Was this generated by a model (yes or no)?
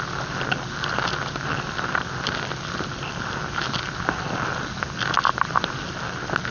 no